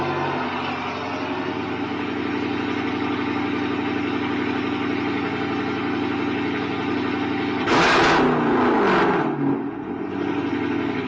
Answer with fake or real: real